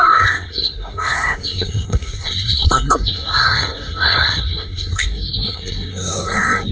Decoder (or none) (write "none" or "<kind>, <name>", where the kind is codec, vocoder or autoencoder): codec, SNAC